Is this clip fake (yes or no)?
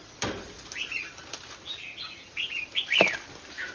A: no